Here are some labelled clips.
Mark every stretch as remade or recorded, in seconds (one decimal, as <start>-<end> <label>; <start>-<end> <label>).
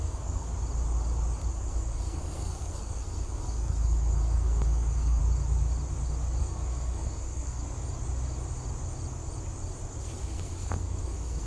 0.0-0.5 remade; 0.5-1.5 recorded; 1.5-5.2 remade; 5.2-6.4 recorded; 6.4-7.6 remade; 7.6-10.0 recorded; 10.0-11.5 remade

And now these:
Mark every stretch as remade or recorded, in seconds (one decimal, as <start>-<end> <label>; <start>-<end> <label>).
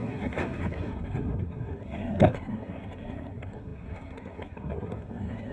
0.0-5.5 remade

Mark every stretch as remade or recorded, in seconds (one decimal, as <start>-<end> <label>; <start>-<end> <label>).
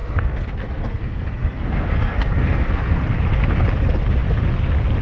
0.0-3.0 remade; 3.0-5.0 recorded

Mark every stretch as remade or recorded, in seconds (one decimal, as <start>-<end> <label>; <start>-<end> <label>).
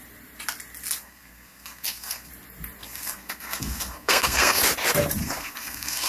0.0-1.0 recorded; 1.0-2.3 remade; 2.3-2.8 recorded; 2.8-4.6 remade; 4.6-5.2 recorded; 5.2-6.1 remade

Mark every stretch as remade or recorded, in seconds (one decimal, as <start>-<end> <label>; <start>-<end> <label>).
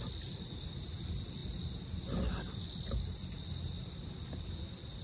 0.0-5.0 recorded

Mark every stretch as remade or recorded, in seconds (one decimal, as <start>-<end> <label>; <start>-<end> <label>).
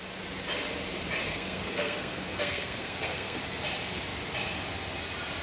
0.0-1.2 recorded; 1.2-3.4 remade; 3.4-5.4 recorded